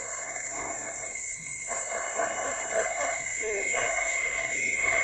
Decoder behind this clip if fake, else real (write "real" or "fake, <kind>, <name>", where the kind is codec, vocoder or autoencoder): fake, codec, SNAC